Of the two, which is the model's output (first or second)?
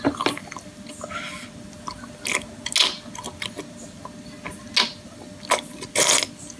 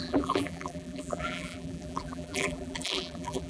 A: second